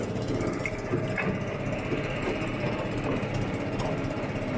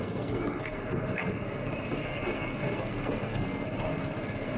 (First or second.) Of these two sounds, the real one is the first